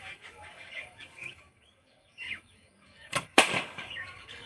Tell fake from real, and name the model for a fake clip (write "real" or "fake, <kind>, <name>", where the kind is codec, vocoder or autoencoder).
fake, codec, DAC